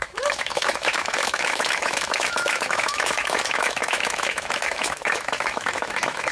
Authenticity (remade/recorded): remade